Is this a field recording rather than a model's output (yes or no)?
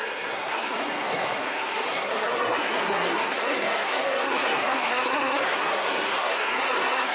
no